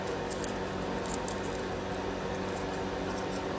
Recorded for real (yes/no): yes